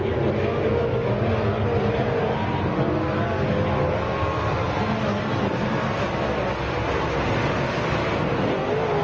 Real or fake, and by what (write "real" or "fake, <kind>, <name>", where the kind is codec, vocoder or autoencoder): real